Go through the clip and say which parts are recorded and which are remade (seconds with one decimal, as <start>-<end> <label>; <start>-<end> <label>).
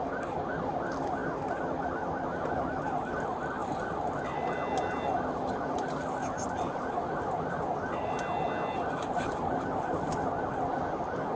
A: 0.0-11.4 recorded